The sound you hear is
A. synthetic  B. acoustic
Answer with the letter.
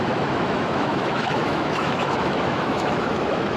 A